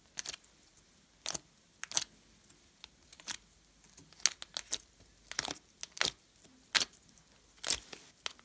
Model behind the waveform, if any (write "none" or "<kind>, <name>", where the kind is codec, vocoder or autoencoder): none